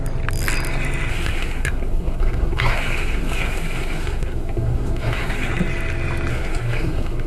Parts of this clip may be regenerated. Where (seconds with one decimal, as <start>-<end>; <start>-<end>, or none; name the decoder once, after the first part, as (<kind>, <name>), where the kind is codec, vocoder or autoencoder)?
1.1-5.5 (codec, SNAC); 6.3-7.3